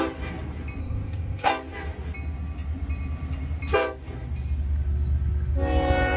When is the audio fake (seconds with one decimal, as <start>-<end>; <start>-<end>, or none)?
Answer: 0.8-1.5